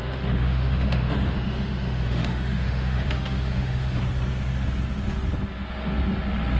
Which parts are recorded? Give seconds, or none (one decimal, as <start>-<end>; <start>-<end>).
4.0-6.6